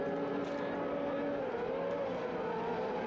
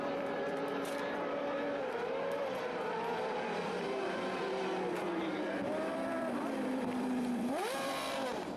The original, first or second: first